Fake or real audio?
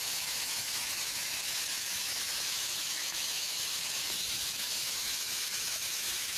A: fake